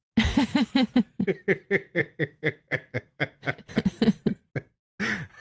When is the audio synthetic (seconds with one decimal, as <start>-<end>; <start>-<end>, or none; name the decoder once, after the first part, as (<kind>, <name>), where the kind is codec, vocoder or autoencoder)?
2.0-3.7 (autoencoder, DAC-VAE)

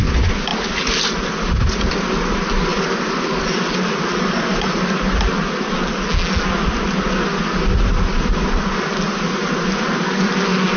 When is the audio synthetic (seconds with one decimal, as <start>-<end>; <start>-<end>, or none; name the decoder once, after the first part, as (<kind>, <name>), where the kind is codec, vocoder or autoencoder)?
none

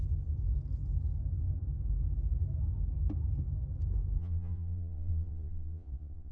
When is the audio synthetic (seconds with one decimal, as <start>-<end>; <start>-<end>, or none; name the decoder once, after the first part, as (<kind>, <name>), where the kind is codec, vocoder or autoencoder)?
4.2-6.3 (vocoder, Vocos)

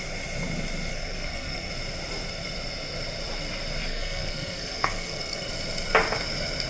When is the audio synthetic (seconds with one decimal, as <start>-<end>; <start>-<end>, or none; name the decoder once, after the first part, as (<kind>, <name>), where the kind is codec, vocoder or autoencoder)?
0.9-1.7 (codec, SNAC); 3.9-5.5

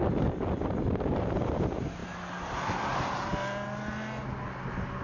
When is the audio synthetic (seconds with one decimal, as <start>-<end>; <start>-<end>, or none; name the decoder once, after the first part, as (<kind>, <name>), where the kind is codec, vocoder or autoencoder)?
none

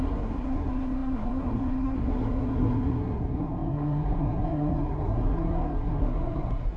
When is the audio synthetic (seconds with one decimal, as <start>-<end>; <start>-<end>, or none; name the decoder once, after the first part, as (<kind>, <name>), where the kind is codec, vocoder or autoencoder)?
0.0-6.8 (codec, SNAC)

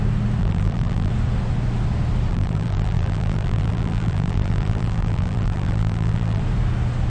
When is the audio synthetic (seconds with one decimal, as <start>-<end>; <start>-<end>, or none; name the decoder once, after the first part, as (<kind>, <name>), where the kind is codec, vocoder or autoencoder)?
0.4-1.1 (vocoder, BigVGAN v2); 2.3-6.4

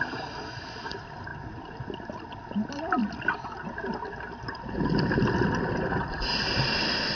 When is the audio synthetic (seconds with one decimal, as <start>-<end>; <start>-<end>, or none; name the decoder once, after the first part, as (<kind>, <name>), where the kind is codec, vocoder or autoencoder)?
none